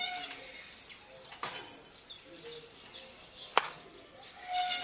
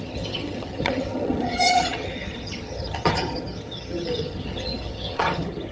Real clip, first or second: first